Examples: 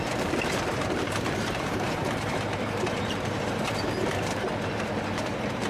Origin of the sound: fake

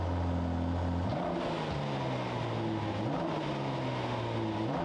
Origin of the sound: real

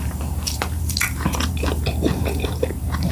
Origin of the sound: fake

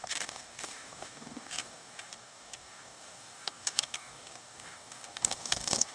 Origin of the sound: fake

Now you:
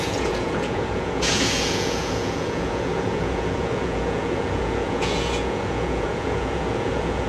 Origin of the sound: fake